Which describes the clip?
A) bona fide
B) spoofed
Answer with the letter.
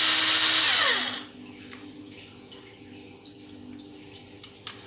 A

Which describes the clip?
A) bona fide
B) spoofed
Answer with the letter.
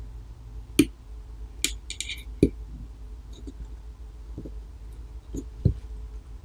A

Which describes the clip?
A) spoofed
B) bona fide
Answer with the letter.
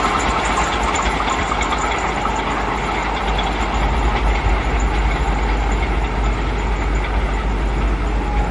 B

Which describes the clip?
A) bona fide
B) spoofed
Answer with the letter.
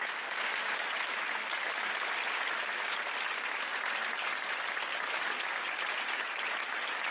A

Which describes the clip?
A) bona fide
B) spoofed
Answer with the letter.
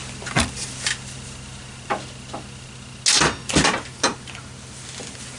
A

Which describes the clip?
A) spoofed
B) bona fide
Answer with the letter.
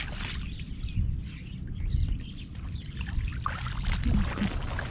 B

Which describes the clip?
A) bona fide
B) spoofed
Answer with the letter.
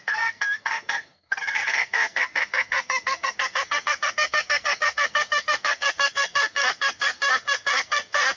B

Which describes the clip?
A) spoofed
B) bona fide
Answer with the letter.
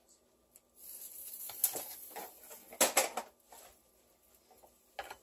B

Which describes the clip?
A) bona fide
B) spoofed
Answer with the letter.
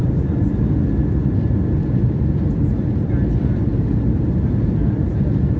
A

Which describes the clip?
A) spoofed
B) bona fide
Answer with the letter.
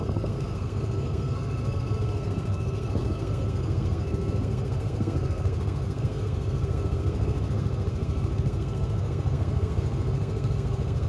A